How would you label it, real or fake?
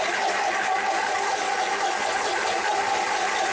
real